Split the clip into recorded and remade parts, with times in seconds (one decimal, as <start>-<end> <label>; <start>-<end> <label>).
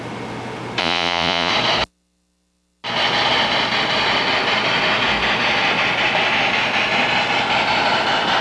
0.0-0.8 recorded; 0.8-1.5 remade; 1.5-8.4 recorded